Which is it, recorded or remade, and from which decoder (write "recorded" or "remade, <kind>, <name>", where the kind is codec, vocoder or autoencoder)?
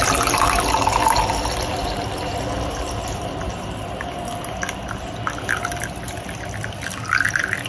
recorded